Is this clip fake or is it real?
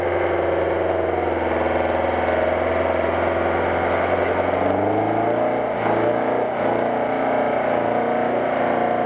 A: real